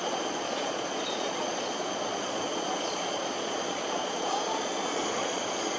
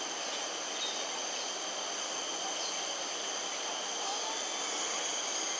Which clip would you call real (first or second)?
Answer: second